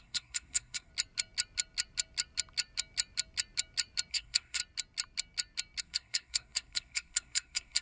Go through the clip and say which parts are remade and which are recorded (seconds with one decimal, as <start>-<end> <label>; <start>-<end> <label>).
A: 0.0-0.9 remade; 0.9-4.1 recorded; 4.1-4.6 remade; 4.6-5.8 recorded; 5.8-7.8 remade